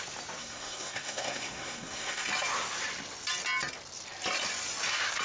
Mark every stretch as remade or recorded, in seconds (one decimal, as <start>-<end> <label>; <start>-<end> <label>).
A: 0.0-0.4 recorded; 0.4-2.3 remade; 2.3-5.2 recorded